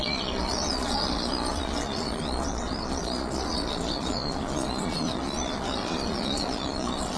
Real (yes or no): no